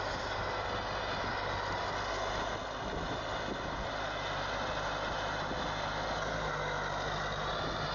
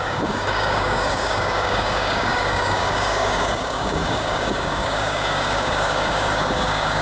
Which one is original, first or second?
first